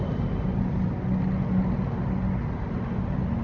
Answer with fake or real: real